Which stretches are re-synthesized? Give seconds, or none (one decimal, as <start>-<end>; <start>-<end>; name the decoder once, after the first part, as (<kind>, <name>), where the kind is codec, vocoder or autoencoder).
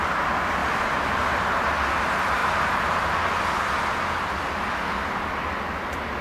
none